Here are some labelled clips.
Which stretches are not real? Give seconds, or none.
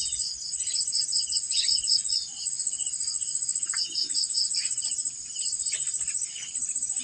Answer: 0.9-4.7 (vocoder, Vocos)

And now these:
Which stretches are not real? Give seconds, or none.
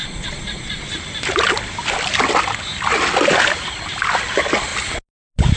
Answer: 0.0-0.9 (vocoder, Vocos)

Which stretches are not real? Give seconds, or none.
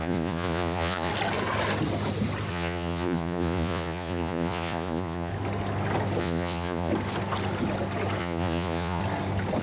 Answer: 0.0-1.1 (vocoder, Vocos); 2.5-5.3; 6.2-6.9; 8.2-9.0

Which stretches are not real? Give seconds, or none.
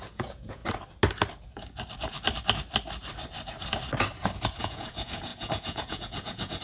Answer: 0.0-0.6 (vocoder, Vocos); 4.6-6.6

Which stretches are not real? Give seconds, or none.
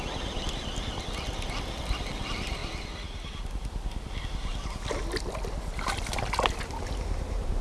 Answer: none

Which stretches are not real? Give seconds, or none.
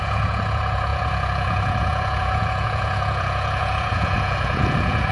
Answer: 0.0-5.1 (vocoder, Vocos)